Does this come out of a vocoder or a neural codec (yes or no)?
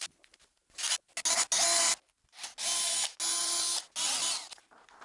no